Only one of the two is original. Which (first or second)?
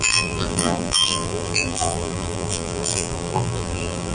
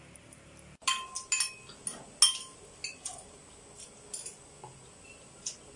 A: second